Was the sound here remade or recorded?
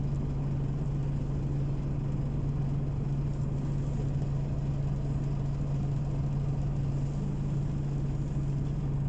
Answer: recorded